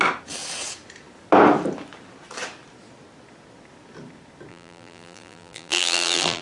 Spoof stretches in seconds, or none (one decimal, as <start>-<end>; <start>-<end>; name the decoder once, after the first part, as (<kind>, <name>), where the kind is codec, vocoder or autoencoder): 4.5-6.4 (vocoder, BigVGAN v2)